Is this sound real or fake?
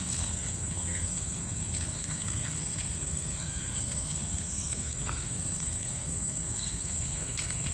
fake